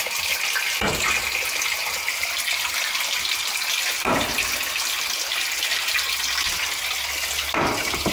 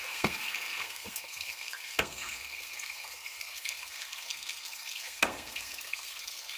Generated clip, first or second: second